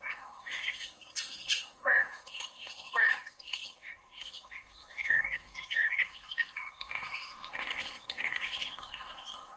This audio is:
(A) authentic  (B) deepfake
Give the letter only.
B